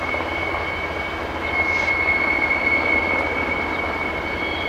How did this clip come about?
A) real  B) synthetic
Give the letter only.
A